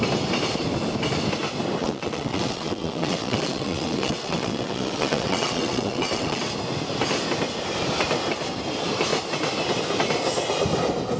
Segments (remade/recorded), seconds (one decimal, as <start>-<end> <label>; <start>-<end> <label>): 0.0-1.8 recorded; 1.8-6.4 remade; 6.4-11.2 recorded